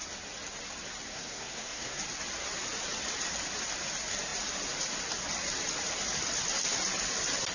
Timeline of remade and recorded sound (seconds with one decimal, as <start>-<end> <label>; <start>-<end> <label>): 0.0-1.1 recorded; 1.1-2.0 remade; 2.0-7.5 recorded